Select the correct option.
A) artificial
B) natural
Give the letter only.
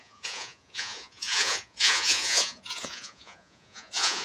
A